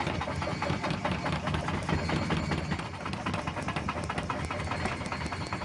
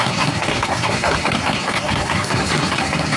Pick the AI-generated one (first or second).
second